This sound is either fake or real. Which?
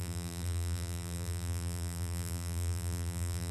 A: fake